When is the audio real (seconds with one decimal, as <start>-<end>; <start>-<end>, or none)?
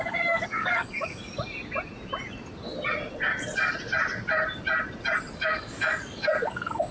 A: 1.2-5.3